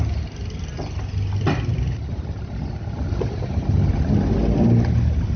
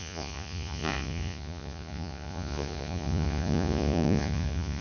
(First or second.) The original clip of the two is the first